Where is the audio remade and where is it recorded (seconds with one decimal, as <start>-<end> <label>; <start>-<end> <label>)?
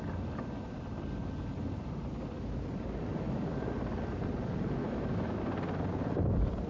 0.0-4.8 recorded; 4.8-5.4 remade; 5.4-6.7 recorded